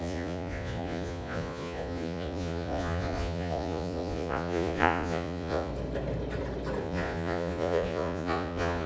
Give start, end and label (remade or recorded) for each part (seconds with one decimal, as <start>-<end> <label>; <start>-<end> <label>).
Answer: 0.0-5.7 remade; 5.7-6.8 recorded; 6.8-8.9 remade